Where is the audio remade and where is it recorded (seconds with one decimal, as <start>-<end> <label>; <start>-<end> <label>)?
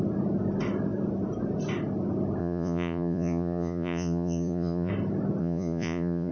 0.0-2.4 recorded; 2.4-4.9 remade; 4.9-5.4 recorded; 5.4-6.3 remade